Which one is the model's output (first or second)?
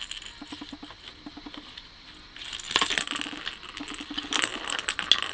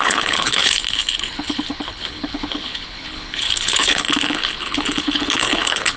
second